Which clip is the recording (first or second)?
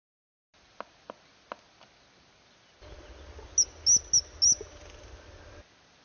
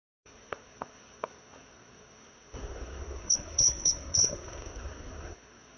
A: first